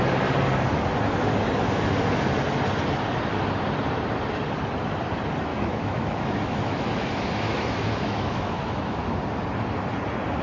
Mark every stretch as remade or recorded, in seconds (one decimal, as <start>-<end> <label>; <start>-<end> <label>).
0.0-5.5 recorded; 5.5-9.1 remade; 9.1-10.4 recorded